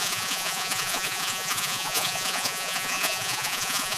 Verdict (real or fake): fake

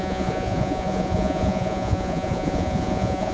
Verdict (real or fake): fake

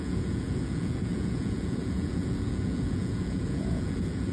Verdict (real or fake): fake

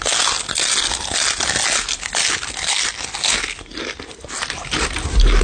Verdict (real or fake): real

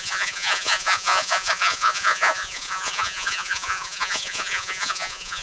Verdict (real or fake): fake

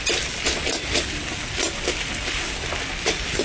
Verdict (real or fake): real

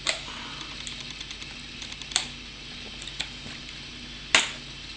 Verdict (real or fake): real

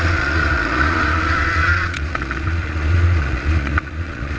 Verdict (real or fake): fake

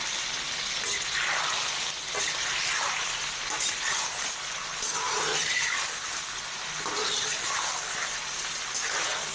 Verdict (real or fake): real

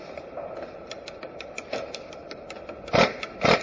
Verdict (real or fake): real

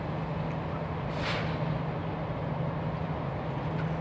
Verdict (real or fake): real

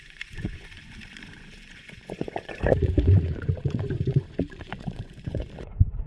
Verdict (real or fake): fake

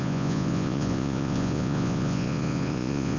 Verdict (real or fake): fake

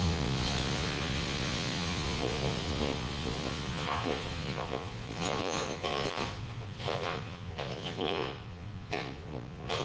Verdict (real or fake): fake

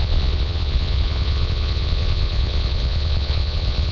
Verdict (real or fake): fake